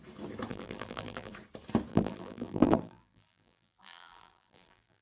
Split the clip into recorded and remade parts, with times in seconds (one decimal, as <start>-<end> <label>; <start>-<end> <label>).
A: 0.0-0.5 recorded; 0.5-1.3 remade; 1.3-1.9 recorded; 1.9-5.0 remade